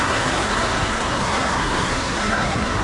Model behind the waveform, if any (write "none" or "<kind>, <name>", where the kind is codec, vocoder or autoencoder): codec, SNAC